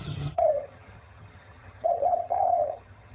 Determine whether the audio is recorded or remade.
remade